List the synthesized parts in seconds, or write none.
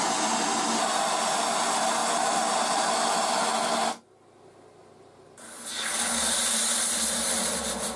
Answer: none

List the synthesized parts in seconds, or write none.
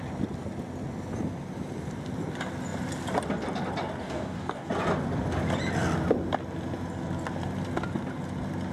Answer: 4.0-4.7 (codec, DAC)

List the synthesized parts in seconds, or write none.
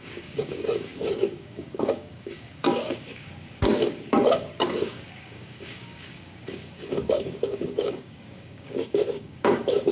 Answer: 0.0-9.9 (codec, DAC)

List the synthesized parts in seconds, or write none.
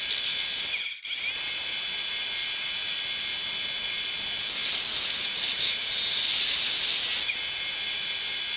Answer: none